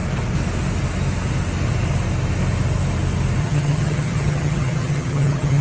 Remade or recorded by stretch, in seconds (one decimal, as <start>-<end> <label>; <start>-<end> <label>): 0.0-3.4 recorded; 3.4-5.6 remade